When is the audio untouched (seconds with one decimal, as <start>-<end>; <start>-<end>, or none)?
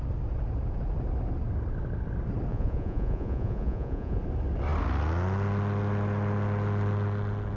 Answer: 0.0-2.5; 4.2-7.6